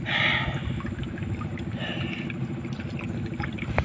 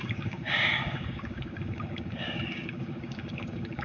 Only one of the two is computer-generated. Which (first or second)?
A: second